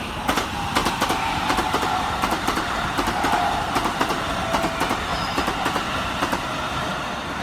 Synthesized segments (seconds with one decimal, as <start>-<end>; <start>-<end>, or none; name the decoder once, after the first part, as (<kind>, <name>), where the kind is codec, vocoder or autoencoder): 0.8-4.0 (vocoder, BigVGAN v2); 5.1-6.9